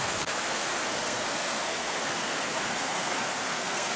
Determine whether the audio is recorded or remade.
remade